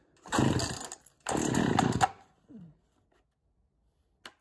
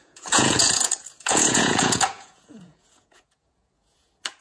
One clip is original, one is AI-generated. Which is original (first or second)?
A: first